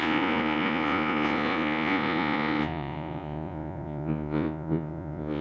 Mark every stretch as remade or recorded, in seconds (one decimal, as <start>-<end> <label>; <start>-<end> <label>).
0.0-5.4 remade